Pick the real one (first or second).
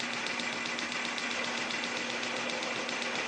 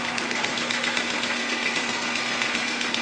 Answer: first